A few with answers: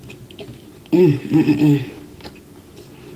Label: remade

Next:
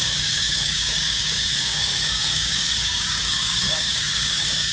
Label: remade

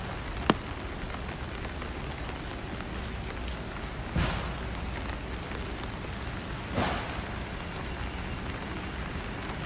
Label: recorded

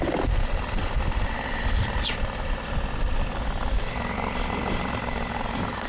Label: recorded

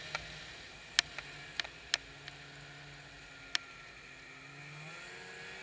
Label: recorded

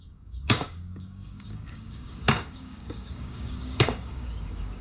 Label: remade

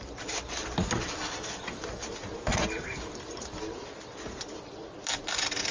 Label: recorded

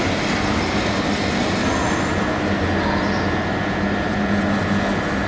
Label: recorded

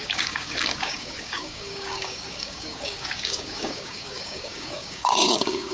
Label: remade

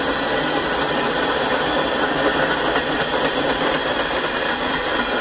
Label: recorded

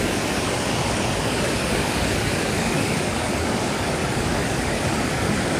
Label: remade